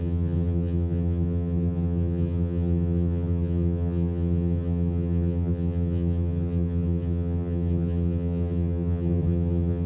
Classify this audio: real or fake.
fake